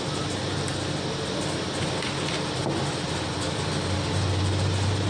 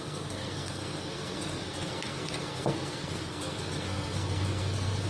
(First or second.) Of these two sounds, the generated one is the second